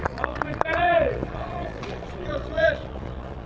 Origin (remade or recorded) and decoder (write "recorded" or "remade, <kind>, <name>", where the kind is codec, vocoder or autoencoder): remade, vocoder, Vocos